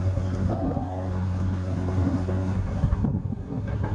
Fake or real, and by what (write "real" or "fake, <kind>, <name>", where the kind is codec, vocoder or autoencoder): fake, codec, SNAC